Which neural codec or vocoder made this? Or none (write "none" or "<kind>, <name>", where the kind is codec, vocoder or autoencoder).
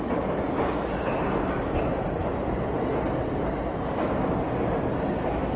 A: none